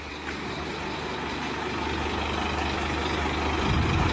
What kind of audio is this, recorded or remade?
recorded